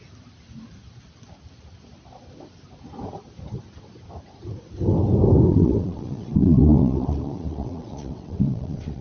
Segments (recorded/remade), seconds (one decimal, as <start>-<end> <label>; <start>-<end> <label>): 0.0-5.5 recorded; 5.5-9.0 remade